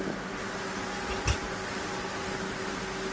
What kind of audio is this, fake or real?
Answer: real